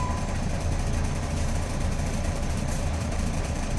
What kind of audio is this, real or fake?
fake